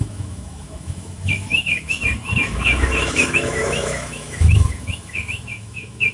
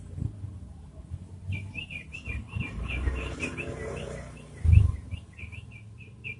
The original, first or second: second